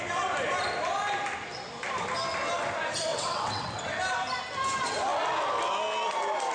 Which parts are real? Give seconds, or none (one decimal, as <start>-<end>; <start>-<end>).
0.0-3.1; 3.8-6.5